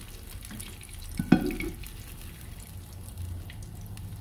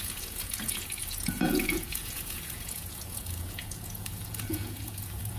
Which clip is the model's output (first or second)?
second